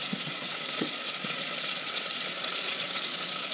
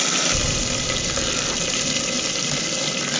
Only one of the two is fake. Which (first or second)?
first